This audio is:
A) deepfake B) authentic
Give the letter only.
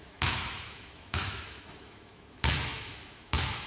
A